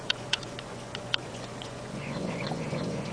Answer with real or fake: fake